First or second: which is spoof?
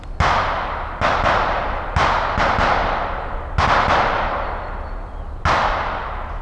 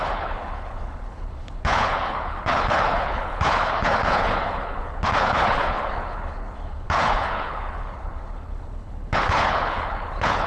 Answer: second